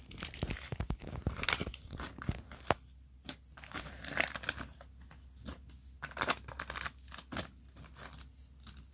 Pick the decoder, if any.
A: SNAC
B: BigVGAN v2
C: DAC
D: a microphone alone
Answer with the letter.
D